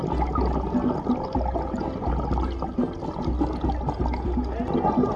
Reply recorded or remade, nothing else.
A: recorded